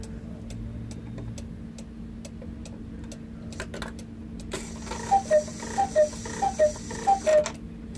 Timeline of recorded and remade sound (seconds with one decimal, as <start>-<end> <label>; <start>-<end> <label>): 0.0-8.0 recorded